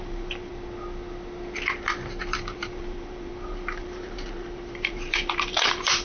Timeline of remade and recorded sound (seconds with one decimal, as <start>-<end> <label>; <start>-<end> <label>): 0.0-0.5 remade; 0.5-2.2 recorded; 2.2-6.0 remade